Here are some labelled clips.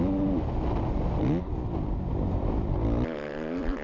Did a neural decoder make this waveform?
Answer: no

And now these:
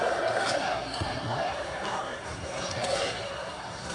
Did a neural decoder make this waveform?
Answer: yes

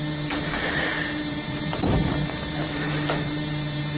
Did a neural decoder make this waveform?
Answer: yes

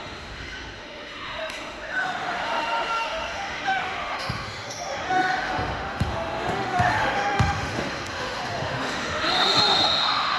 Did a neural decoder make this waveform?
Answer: yes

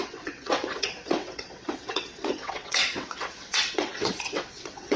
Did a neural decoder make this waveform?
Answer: yes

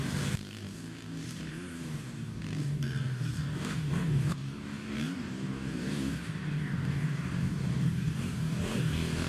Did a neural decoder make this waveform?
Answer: yes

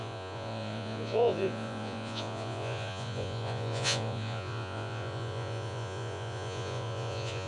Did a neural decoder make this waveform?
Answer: yes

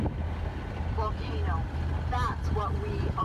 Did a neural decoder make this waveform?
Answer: no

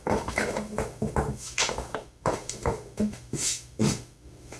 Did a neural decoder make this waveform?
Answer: yes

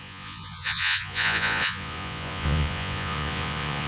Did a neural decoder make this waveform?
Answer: yes